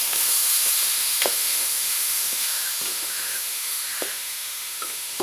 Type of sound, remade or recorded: remade